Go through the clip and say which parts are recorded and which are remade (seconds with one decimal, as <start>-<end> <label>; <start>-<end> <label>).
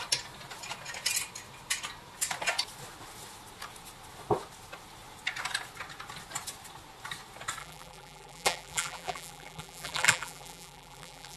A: 0.0-7.6 recorded; 7.6-11.4 remade